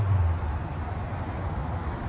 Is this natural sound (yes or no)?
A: yes